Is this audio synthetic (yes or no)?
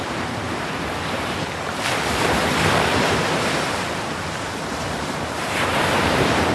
yes